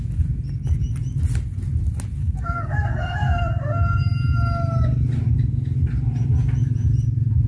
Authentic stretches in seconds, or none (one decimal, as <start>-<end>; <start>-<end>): 0.0-2.2; 4.0-7.5